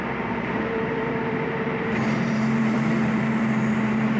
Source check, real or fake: fake